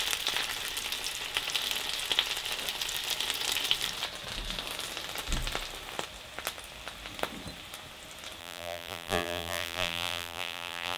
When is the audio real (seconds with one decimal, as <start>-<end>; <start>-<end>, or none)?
0.0-8.4